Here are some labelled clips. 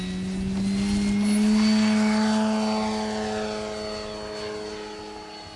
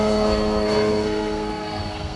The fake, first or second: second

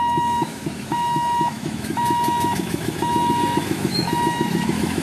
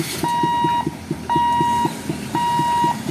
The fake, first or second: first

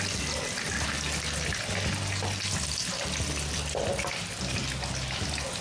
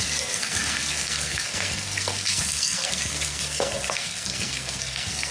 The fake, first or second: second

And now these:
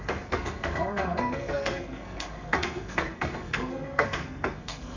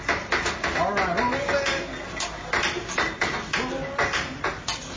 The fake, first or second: first